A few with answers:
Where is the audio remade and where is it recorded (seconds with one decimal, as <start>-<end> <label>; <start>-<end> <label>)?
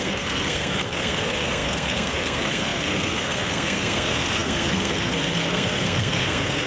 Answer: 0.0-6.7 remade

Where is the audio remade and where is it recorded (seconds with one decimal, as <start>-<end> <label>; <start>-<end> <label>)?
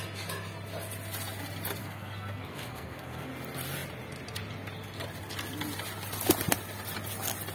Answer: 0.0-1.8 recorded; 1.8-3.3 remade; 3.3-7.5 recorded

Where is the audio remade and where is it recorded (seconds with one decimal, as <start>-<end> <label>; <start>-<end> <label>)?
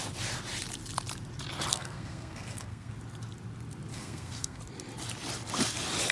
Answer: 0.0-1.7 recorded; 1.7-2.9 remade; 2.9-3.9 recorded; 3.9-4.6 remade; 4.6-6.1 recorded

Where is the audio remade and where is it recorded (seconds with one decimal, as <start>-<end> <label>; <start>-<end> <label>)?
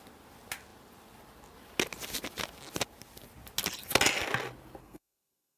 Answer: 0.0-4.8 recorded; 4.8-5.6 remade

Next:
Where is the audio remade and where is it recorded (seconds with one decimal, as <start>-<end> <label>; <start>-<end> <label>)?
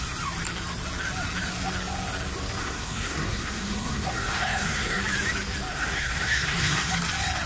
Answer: 0.0-2.6 recorded; 2.6-5.0 remade; 5.0-5.7 recorded; 5.7-6.9 remade; 6.9-7.5 recorded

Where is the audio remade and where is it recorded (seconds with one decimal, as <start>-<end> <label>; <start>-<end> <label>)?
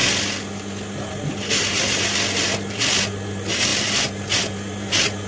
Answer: 0.0-5.3 recorded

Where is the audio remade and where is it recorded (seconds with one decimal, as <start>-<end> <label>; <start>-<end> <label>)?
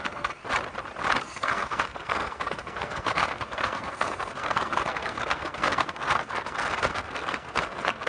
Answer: 0.0-0.4 remade; 0.4-1.2 recorded; 1.2-8.1 remade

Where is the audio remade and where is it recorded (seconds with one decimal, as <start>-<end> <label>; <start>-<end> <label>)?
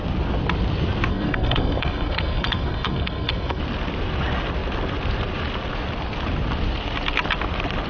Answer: 0.0-1.1 recorded; 1.1-3.6 remade; 3.6-7.9 recorded